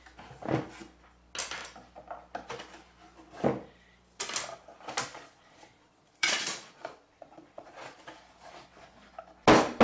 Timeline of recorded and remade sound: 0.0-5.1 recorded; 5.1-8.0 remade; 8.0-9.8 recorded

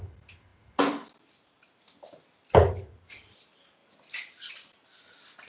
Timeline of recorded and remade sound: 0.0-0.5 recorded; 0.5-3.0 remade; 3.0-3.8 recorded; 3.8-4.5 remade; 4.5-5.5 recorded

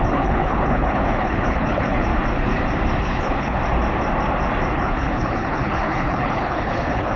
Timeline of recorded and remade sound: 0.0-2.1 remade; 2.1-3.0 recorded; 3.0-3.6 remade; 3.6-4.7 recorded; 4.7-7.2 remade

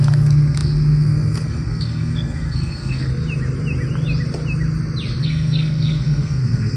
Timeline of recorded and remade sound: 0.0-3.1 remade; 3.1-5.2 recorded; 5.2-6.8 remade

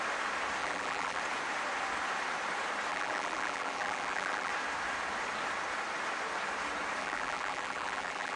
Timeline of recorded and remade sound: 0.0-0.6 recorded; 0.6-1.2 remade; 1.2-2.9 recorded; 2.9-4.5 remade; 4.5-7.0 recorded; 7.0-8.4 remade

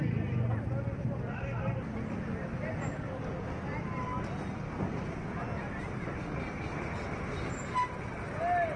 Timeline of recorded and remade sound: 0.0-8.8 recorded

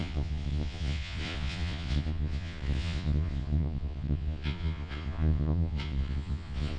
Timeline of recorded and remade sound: 0.0-6.8 remade

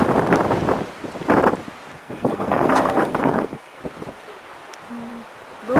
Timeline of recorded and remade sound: 0.0-2.0 recorded; 2.0-3.8 remade; 3.8-5.8 recorded